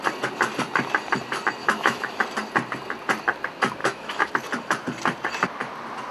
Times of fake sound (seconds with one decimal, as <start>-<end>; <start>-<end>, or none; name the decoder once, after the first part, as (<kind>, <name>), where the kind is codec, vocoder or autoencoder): 1.6-2.2 (autoencoder, DAC-VAE); 3.8-4.3